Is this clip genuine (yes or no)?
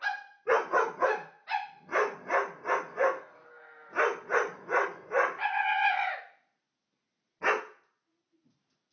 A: yes